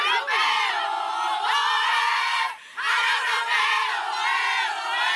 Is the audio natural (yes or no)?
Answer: no